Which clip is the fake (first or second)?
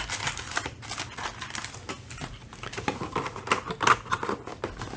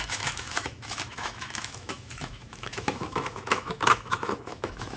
second